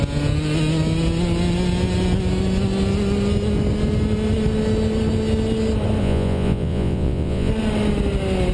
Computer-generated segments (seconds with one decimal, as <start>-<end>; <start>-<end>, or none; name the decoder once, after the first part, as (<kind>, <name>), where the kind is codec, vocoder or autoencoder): 6.0-7.5 (vocoder, Vocos)